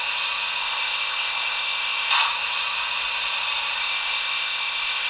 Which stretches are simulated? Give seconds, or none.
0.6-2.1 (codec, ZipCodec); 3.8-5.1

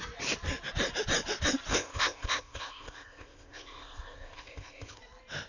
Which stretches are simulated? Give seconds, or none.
1.7-5.0 (codec, ZipCodec)

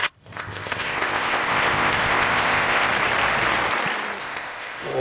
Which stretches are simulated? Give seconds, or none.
0.0-2.9 (codec, ZipCodec); 4.2-5.0

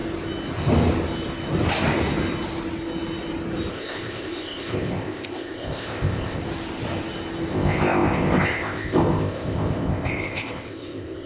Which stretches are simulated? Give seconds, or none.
3.7-6.4 (codec, ZipCodec); 7.5-11.3

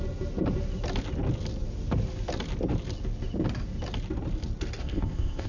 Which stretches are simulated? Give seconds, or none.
4.8-5.5 (codec, ZipCodec)

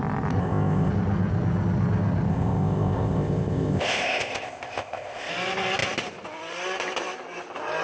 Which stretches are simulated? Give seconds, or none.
0.4-0.9 (codec, ZipCodec); 2.3-5.3

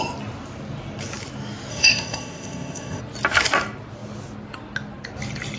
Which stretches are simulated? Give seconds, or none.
1.7-3.0 (codec, ZipCodec)